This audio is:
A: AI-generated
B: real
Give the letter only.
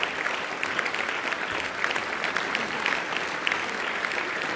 B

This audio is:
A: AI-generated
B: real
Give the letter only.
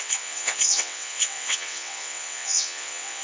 A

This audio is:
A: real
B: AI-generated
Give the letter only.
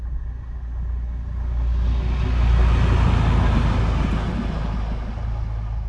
A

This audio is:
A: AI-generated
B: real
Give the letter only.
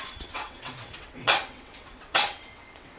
A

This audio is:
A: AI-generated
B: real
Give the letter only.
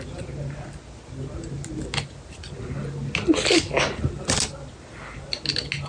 B